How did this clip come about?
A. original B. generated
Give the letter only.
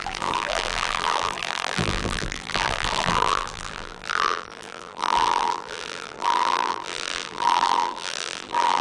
B